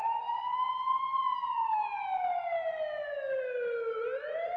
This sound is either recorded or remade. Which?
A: recorded